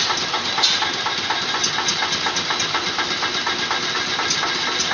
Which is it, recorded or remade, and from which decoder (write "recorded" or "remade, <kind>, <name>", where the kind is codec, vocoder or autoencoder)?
recorded